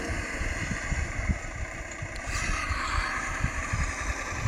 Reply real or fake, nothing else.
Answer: real